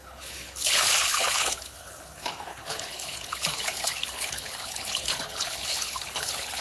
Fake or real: fake